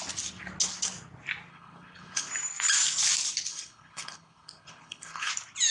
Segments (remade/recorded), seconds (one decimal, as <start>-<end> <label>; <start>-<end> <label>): 0.0-1.5 recorded; 1.5-2.3 remade; 2.3-3.5 recorded; 3.5-5.3 remade; 5.3-5.7 recorded